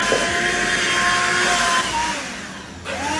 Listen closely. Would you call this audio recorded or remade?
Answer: recorded